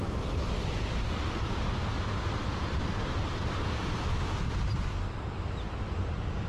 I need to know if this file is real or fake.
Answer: real